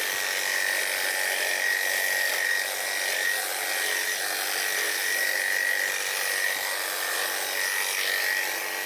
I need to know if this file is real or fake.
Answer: fake